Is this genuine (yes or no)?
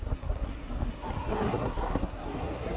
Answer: no